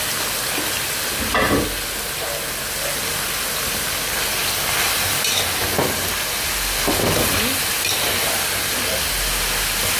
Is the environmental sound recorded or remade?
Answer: recorded